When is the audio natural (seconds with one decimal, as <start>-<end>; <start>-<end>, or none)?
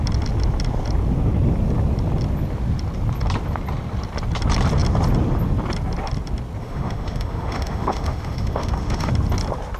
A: 0.0-6.6; 9.1-9.8